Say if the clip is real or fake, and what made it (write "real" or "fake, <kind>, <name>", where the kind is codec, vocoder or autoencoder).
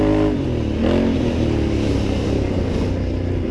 real